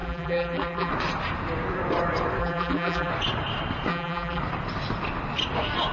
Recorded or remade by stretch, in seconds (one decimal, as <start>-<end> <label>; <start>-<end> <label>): 0.0-0.9 remade; 0.9-2.4 recorded; 2.4-3.1 remade; 3.1-3.9 recorded; 3.9-4.4 remade; 4.4-5.9 recorded